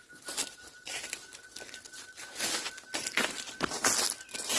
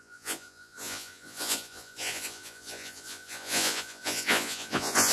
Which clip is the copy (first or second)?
second